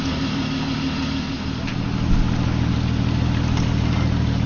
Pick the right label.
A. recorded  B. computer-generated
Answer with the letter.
A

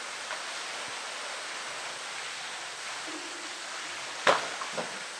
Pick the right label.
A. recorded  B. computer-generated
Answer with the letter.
A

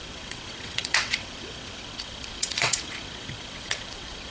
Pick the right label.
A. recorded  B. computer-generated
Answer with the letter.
B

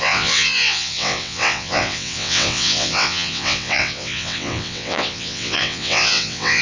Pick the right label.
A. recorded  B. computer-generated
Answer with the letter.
B